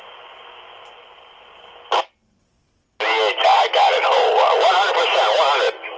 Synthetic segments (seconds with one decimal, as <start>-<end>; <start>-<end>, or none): none

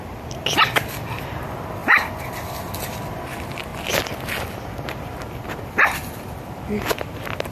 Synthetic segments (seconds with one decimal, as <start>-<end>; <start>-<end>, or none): none

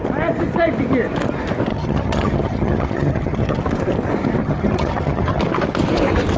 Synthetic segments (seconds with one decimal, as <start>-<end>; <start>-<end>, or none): 1.7-3.6; 4.4-5.4

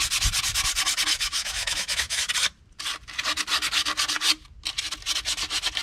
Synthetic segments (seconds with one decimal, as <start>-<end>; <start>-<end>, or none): 1.1-2.3